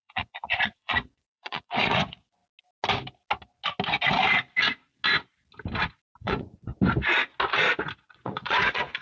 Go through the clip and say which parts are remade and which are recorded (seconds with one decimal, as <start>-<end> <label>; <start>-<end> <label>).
0.0-2.4 remade; 2.4-6.2 recorded; 6.2-6.7 remade; 6.7-8.1 recorded; 8.1-9.0 remade